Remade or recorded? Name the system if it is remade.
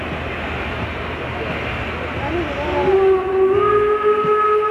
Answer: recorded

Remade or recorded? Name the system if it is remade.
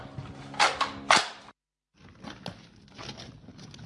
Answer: recorded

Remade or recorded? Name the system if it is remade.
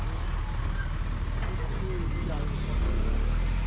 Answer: recorded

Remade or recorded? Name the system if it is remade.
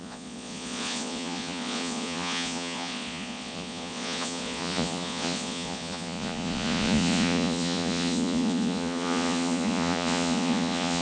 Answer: remade, vocoder, Vocos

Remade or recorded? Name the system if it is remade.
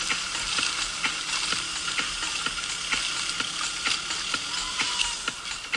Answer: recorded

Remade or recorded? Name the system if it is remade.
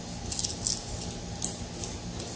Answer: recorded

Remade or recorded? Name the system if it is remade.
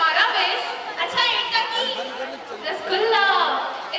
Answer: recorded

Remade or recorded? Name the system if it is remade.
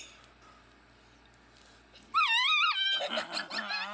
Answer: recorded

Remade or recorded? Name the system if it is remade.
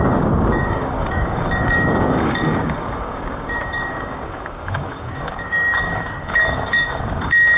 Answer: remade, codec, DAC